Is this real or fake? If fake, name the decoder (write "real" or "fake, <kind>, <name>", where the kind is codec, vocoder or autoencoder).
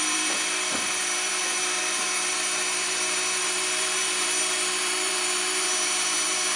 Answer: fake, vocoder, BigVGAN v2